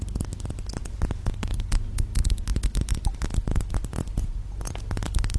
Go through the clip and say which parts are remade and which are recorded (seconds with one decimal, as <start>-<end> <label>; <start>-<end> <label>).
0.0-5.4 recorded